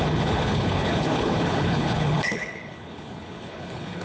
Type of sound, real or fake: fake